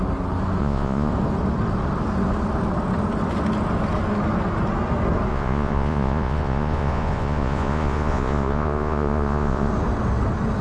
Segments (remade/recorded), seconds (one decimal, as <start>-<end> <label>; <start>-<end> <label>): 0.0-0.6 recorded; 0.6-1.1 remade; 1.1-5.3 recorded; 5.3-9.7 remade; 9.7-10.6 recorded